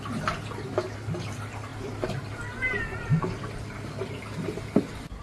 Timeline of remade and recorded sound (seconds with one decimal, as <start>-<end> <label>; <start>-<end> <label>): 0.0-5.2 recorded